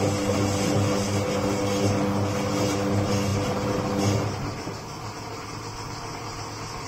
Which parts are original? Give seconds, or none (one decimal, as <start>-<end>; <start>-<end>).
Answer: 0.0-6.9

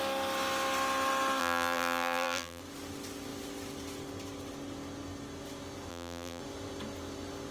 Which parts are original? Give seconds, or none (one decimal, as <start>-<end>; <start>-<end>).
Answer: 0.0-1.4; 2.6-5.9; 6.4-7.5

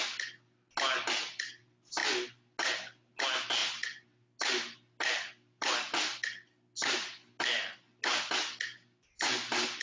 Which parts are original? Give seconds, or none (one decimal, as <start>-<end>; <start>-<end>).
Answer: 0.0-9.8

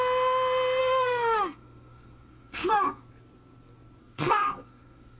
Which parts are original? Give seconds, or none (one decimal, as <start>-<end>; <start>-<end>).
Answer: 0.0-0.8; 3.0-4.0

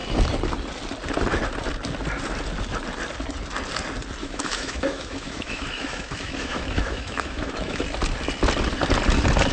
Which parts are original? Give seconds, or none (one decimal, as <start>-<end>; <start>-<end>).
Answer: 0.0-4.2; 7.8-9.5

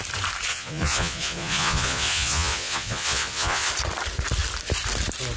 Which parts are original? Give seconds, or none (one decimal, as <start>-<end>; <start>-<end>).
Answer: 0.0-0.5; 3.7-5.4

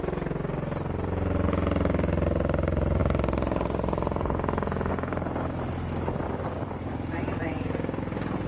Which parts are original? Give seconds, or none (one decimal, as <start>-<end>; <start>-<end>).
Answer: 0.0-7.4; 8.0-8.5